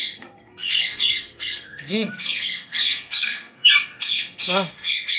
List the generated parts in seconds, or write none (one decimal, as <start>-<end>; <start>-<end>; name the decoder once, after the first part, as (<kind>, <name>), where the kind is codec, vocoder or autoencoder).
0.0-5.2 (codec, SNAC)